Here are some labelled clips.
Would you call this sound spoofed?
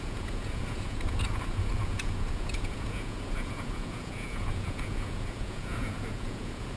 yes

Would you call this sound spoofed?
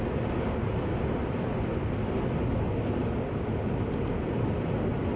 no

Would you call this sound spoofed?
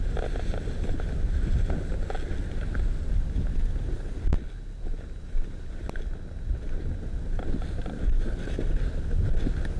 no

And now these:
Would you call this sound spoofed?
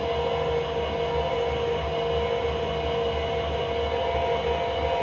no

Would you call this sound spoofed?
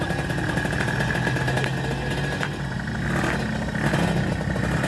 no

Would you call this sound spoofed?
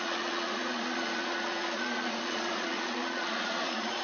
yes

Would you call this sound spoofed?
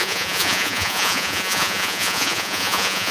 yes